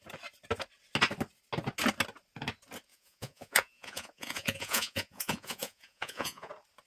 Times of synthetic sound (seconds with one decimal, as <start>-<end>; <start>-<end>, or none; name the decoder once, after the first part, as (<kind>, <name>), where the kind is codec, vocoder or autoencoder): 2.9-6.5 (vocoder, Vocos)